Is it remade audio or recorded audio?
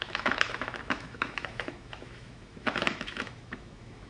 remade